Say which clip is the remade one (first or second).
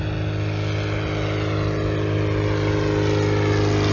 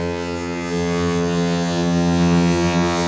second